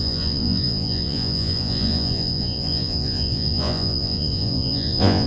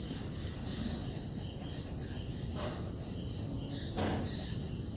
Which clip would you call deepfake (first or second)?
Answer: first